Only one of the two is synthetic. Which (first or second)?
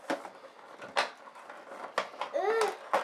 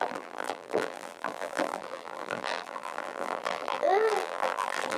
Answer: second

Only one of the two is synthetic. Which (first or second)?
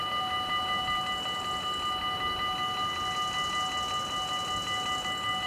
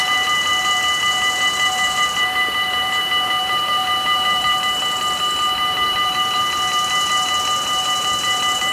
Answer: second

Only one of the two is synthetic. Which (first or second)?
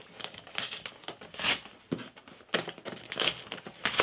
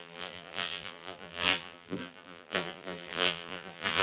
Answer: second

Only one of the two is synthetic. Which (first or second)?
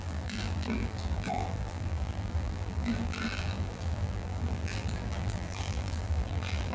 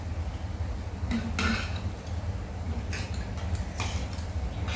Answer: first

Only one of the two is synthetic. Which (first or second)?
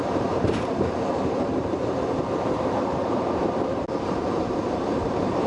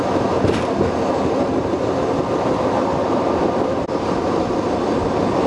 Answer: first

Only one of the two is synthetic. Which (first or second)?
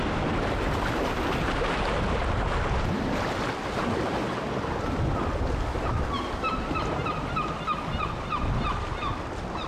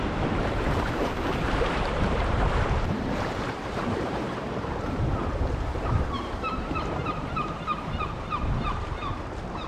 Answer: second